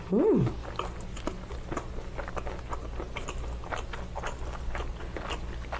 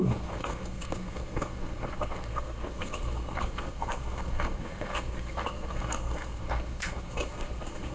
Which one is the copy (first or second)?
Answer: second